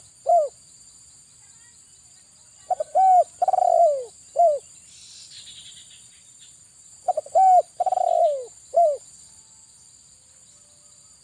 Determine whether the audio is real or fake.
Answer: real